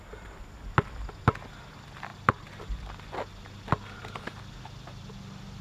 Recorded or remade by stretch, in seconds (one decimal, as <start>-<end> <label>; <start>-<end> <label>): 0.0-5.6 recorded